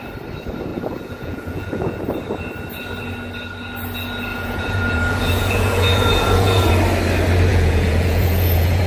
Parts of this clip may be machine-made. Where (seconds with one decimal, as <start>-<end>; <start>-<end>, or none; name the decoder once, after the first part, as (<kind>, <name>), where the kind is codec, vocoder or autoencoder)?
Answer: 0.7-2.0 (vocoder, Vocos); 4.3-6.7; 7.5-8.9